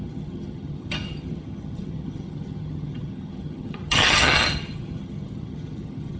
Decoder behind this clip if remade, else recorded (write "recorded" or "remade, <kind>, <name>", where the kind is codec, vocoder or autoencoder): remade, vocoder, HiFi-GAN